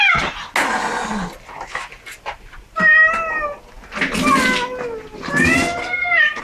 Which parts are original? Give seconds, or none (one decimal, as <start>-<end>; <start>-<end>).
0.0-5.8